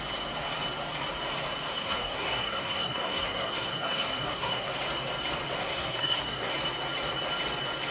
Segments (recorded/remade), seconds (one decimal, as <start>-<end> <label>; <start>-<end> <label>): 0.0-1.8 recorded; 1.8-4.7 remade; 4.7-5.6 recorded; 5.6-6.5 remade; 6.5-7.9 recorded